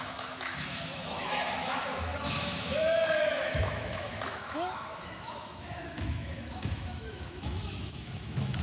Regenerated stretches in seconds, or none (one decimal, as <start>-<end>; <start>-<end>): 0.0-8.6